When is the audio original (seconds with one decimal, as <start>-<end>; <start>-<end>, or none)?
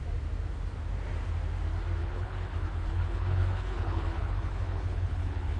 0.0-2.0